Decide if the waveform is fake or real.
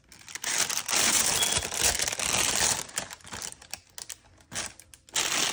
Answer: real